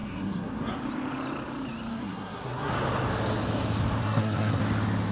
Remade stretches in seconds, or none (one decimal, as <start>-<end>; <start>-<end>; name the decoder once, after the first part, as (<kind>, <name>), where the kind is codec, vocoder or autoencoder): 0.0-0.8 (codec, SNAC); 1.9-2.7; 4.0-4.6